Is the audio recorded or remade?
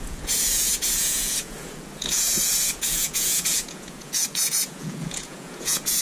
remade